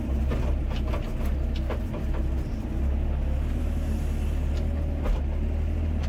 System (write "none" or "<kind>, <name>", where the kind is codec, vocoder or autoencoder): none